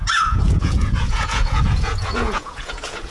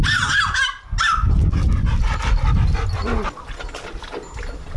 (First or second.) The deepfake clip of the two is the first